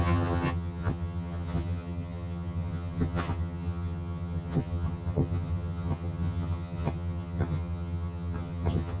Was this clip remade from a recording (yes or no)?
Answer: yes